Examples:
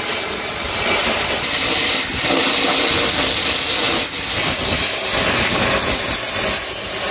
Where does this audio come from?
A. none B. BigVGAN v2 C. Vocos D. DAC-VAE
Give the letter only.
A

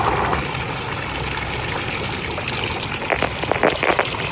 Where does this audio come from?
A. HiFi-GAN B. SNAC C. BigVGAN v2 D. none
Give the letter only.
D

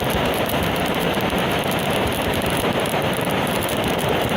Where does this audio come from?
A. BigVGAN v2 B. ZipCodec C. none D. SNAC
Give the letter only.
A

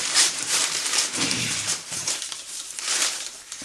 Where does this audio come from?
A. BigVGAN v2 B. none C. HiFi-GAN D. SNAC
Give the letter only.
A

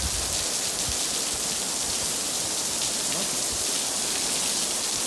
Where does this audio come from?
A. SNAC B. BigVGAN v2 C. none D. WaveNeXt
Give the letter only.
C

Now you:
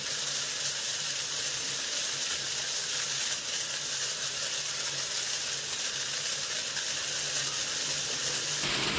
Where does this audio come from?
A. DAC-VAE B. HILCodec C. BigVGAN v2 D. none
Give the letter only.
D